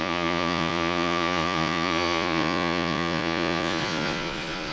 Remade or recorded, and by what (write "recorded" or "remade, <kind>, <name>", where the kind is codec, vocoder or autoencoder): remade, vocoder, Vocos